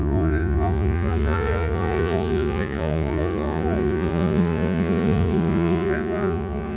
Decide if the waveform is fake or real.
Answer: fake